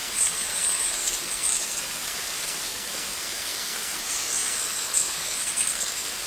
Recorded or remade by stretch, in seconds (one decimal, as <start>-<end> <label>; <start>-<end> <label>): 0.0-6.3 remade